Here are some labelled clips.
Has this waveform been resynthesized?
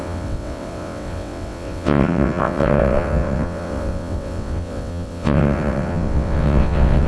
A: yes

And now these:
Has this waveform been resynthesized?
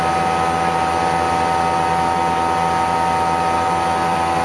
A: no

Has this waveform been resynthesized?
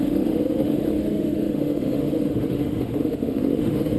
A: yes